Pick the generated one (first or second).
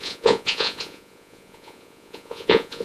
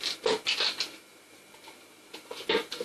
first